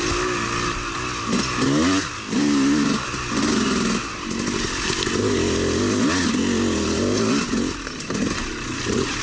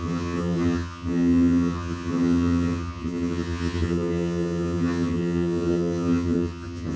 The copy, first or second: second